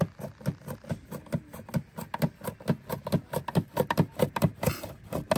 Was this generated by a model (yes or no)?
no